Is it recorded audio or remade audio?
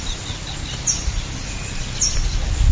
recorded